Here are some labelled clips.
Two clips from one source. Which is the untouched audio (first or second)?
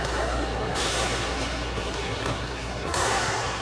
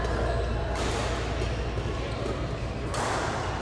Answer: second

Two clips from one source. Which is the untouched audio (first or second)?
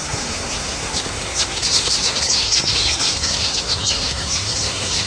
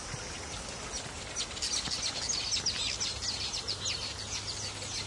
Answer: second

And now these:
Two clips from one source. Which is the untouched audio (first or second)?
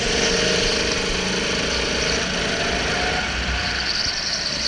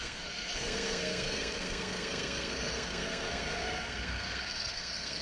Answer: first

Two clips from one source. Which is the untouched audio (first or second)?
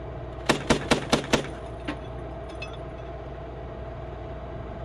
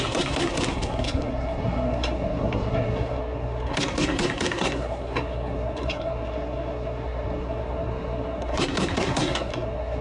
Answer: first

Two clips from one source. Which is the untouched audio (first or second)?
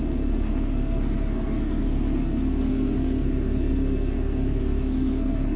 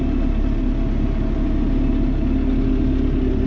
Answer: second